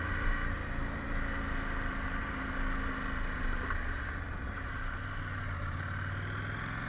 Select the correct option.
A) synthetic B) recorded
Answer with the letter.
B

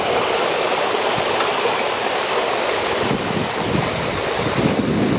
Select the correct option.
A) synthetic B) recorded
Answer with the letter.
B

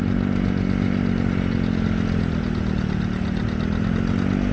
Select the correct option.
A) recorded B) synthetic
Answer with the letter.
A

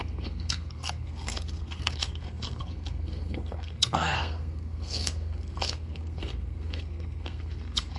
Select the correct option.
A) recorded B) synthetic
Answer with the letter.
B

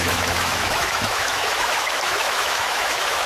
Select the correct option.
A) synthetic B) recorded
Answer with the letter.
A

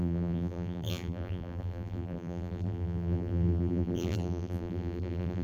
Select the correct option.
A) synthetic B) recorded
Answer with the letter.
A